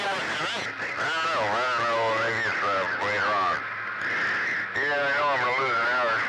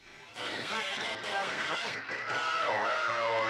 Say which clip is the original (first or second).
first